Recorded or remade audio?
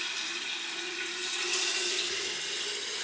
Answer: recorded